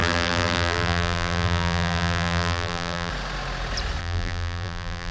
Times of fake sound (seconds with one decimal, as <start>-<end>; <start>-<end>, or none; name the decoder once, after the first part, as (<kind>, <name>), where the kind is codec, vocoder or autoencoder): 0.0-3.1 (vocoder, BigVGAN v2); 4.0-5.1